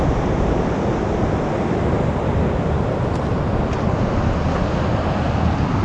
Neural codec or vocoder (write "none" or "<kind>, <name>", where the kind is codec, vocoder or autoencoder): none